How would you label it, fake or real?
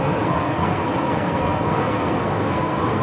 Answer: fake